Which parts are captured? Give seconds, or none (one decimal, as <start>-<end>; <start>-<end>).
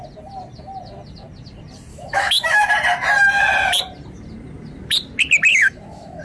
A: 0.0-1.9; 2.7-5.5